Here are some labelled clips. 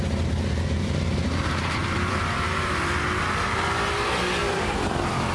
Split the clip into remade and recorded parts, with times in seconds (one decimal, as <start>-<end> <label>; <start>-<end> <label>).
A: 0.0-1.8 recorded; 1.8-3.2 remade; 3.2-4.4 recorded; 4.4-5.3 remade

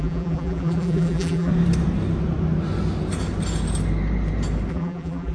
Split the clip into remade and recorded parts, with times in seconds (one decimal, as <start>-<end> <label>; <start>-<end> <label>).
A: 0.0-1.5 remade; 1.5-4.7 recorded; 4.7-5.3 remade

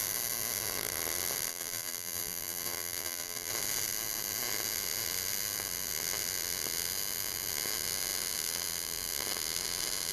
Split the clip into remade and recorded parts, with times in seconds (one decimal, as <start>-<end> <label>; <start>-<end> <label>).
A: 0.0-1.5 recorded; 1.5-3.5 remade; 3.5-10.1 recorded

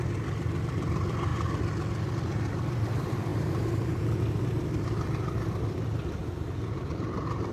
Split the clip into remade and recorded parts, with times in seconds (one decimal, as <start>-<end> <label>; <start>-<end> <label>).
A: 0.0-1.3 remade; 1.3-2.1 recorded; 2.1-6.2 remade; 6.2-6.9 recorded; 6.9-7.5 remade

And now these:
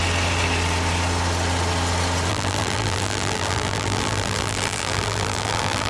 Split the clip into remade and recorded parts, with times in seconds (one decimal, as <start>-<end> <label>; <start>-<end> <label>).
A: 0.0-2.3 recorded; 2.3-5.9 remade